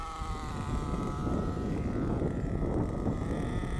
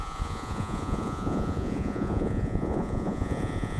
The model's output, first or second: second